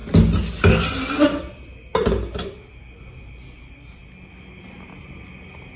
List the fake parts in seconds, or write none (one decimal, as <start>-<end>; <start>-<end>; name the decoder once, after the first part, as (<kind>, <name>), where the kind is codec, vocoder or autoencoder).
none

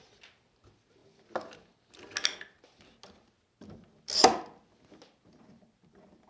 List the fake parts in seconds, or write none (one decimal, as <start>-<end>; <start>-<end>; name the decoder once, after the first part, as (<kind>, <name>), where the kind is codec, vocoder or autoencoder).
none

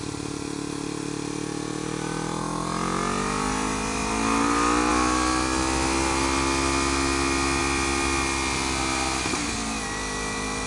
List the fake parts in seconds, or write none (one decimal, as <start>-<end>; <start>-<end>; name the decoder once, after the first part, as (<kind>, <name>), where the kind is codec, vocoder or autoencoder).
none